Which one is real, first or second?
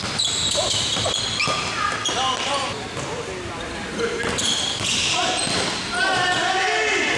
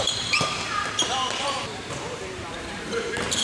first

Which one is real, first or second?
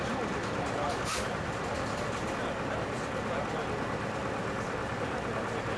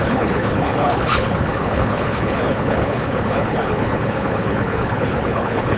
first